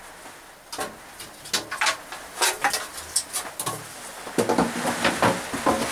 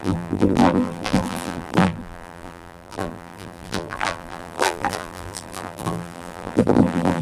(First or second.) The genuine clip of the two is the first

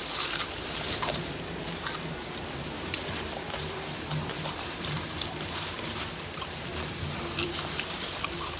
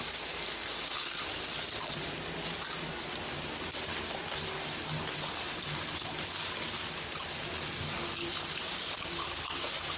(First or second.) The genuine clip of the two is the second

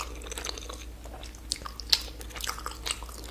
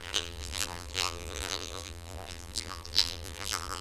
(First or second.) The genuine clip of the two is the first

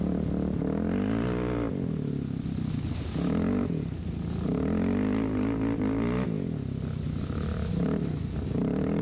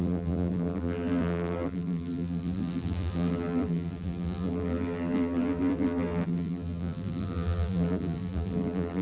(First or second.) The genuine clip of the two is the first